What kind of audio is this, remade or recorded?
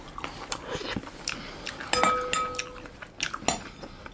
recorded